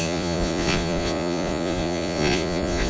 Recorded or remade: remade